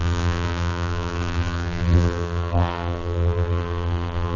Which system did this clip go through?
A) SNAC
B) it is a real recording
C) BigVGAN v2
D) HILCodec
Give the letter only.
C